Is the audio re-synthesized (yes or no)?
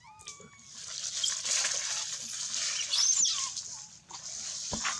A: no